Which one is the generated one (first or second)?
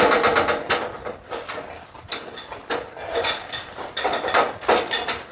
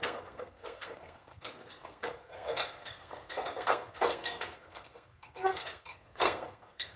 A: second